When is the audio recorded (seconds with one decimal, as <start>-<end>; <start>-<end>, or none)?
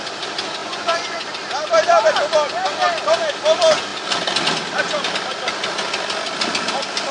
0.0-0.6; 1.3-7.1